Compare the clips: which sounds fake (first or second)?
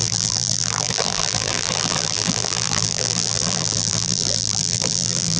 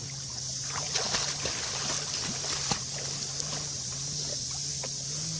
first